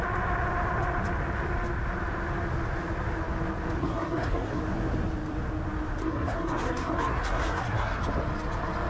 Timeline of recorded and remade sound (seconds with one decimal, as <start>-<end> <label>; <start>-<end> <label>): 0.0-3.8 recorded; 3.8-4.6 remade; 4.6-6.0 recorded; 6.0-8.0 remade; 8.0-8.9 recorded